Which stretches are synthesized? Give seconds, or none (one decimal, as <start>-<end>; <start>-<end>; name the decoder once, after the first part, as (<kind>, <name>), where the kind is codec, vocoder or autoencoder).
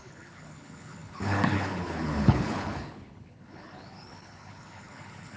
0.0-5.4 (codec, HILCodec)